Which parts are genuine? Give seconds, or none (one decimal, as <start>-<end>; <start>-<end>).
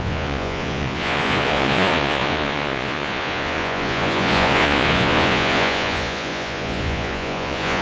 none